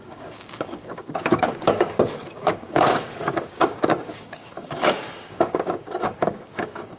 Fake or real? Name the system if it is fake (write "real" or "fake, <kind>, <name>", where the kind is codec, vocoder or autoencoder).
fake, codec, DAC